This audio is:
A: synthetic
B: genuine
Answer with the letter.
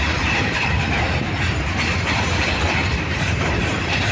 A